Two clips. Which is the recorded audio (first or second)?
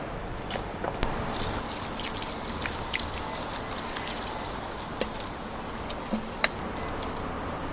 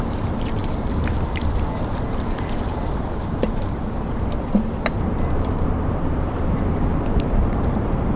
first